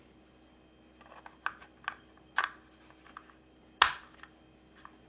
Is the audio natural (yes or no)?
yes